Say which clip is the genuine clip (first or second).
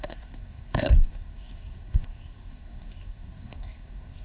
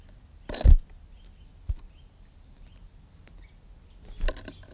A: second